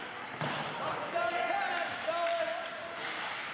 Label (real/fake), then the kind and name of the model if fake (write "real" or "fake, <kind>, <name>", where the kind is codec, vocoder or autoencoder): real